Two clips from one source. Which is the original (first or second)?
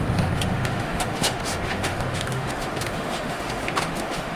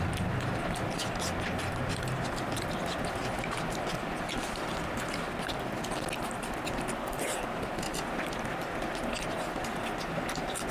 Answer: second